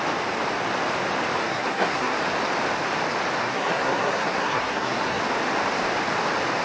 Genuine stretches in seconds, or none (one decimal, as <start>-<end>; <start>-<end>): 0.0-1.4; 2.2-3.4; 5.2-6.6